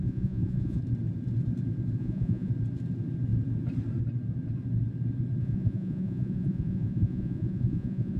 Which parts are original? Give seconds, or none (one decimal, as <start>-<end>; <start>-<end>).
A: 0.8-2.0; 2.5-5.4

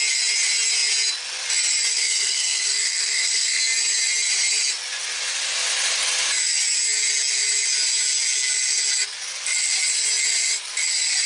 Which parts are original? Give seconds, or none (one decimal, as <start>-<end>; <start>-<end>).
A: 0.0-1.9; 3.6-11.3

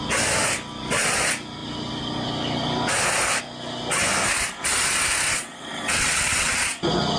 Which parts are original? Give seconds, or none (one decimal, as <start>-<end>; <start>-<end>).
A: 0.0-5.3; 6.6-7.2

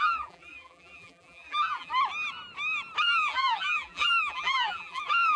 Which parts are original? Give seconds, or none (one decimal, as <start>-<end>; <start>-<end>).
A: 1.9-3.0

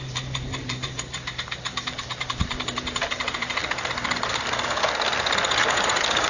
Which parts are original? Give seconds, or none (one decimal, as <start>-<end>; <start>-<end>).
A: 3.6-6.3

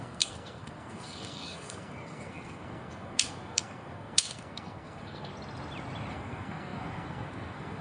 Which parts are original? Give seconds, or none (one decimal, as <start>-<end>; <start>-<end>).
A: 5.3-6.1